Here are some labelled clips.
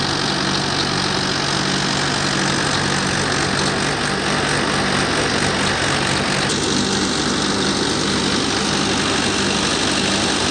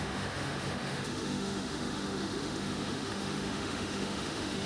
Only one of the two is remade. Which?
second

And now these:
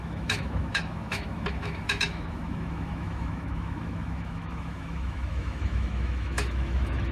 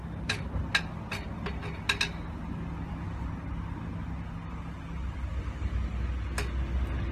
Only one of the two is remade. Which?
first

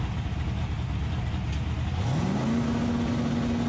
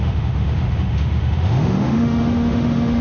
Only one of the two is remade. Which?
second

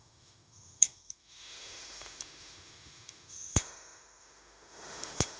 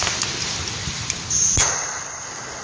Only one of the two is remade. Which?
first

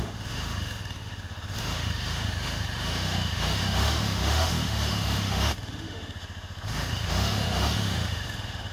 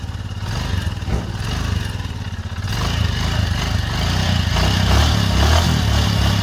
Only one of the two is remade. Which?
first